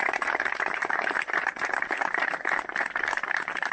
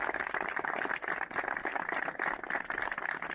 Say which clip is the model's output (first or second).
first